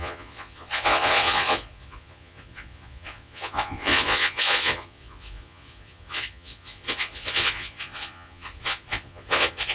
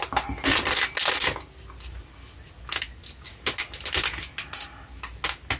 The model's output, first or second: first